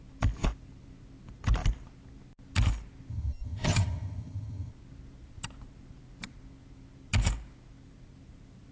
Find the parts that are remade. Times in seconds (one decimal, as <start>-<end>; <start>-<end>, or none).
3.1-4.7